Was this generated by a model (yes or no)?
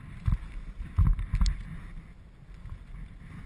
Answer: no